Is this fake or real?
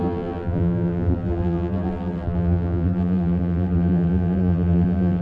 fake